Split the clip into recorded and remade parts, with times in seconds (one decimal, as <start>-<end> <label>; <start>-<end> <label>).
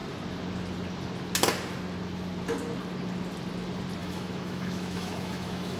0.0-4.0 recorded; 4.0-5.8 remade